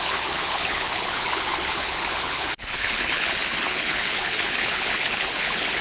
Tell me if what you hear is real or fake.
fake